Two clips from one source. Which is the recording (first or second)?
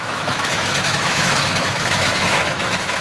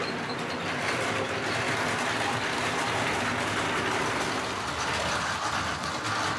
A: second